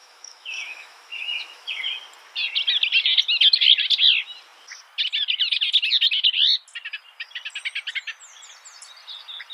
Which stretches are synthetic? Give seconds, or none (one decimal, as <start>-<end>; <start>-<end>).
0.0-1.8